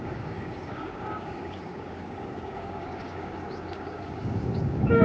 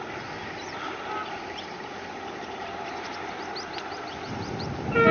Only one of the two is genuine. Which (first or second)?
second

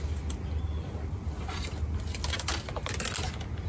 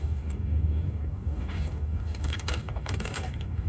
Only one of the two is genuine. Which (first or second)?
first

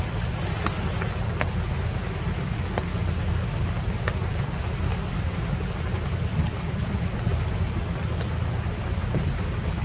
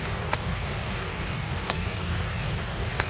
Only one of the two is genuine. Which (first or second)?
first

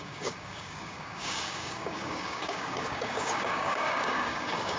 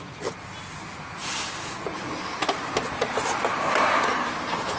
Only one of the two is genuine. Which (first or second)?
second